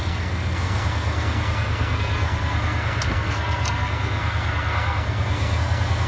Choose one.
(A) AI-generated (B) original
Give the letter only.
A